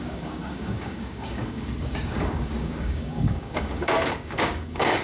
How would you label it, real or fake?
fake